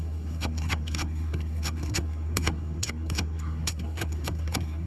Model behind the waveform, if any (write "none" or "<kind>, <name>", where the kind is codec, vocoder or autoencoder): codec, SNAC